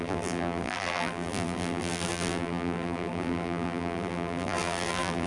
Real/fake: fake